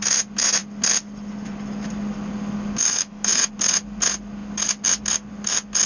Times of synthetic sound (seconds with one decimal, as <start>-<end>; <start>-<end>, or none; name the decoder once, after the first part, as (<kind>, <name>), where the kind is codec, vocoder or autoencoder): 3.0-3.5 (autoencoder, DAC-VAE)